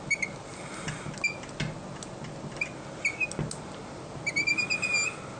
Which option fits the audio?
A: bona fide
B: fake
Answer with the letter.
A